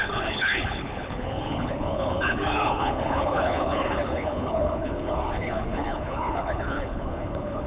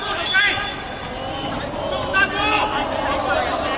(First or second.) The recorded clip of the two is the second